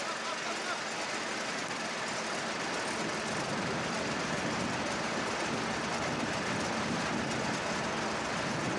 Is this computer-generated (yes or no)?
no